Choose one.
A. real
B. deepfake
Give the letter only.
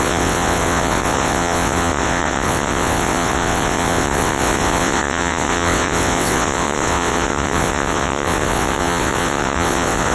B